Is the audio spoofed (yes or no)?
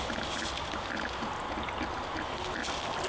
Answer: no